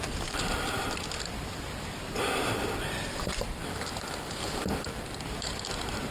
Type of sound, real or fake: fake